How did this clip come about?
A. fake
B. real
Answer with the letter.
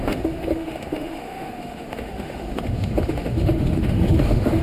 A